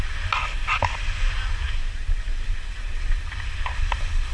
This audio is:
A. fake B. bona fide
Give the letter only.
B